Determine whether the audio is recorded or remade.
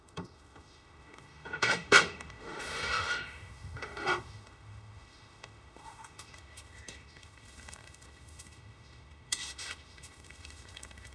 remade